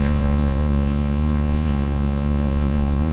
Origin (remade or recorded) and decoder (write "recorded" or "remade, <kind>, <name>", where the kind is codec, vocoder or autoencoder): remade, vocoder, Vocos